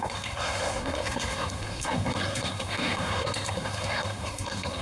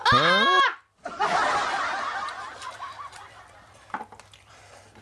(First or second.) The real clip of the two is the second